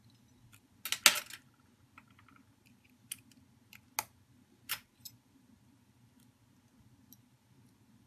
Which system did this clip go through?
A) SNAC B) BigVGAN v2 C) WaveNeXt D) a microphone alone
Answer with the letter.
D